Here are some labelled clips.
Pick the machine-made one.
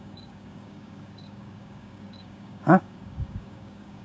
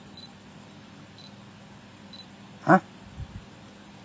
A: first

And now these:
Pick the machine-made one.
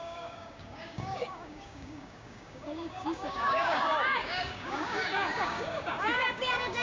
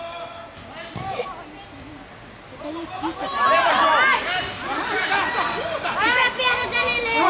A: first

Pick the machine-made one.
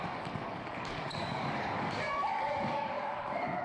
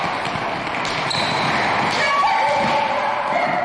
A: first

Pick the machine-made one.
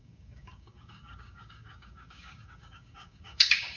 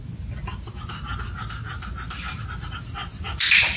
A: first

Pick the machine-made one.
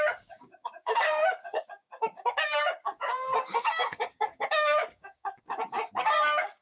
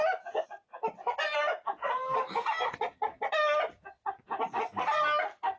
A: first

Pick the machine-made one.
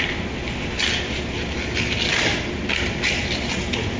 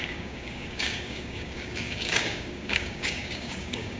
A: second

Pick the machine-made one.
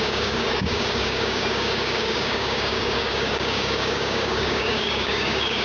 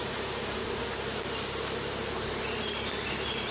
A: first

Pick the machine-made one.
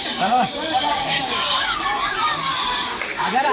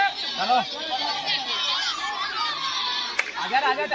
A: first